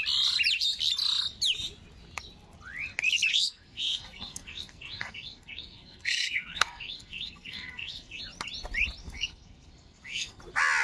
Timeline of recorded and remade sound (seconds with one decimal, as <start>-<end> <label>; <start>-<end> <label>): 0.0-3.3 recorded; 3.3-8.2 remade; 8.2-9.0 recorded; 9.0-10.4 remade; 10.4-10.8 recorded